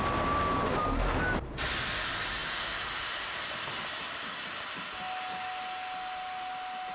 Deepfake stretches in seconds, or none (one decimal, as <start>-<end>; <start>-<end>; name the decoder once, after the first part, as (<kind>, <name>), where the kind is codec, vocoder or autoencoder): none